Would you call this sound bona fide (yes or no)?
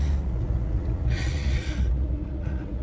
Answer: no